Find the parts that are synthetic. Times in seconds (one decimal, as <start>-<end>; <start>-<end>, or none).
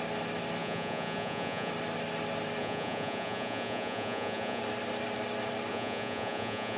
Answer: 0.6-1.7; 2.6-4.6; 5.7-6.8